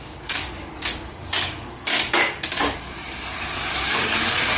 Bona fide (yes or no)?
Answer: no